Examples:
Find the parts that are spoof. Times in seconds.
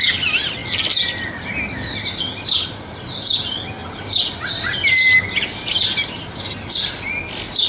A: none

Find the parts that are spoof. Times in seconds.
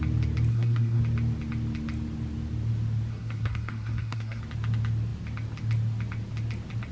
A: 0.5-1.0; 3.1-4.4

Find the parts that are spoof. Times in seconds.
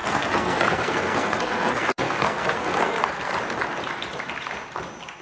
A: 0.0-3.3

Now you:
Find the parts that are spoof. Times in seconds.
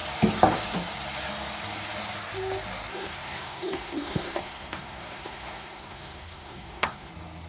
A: 2.9-7.1